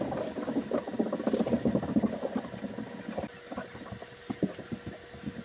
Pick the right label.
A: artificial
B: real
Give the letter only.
B